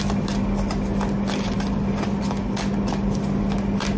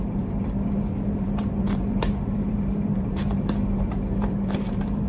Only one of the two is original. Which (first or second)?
first